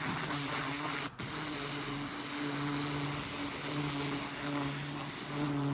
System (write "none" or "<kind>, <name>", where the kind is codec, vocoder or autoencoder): none